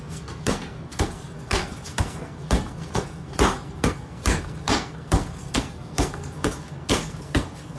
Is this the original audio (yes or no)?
no